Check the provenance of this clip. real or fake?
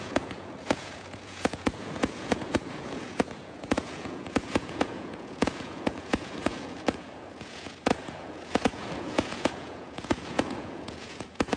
fake